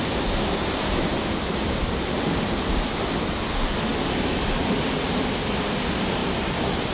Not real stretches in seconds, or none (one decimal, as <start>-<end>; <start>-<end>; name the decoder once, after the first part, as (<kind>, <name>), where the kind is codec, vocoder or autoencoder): 6.2-6.9 (vocoder, BigVGAN v2)